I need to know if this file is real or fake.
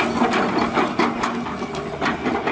real